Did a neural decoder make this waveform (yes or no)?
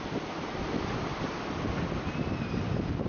no